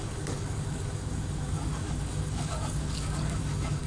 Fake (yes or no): yes